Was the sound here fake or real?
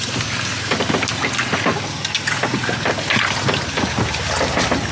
real